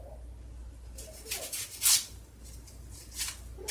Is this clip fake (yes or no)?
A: no